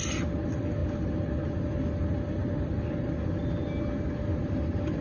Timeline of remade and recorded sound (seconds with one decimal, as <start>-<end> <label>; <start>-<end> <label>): 0.0-5.0 recorded